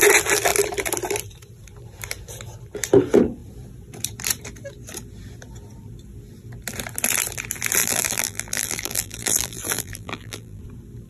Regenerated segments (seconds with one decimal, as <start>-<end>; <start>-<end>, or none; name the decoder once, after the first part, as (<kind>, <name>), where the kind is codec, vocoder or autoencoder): 7.8-10.6 (vocoder, BigVGAN v2)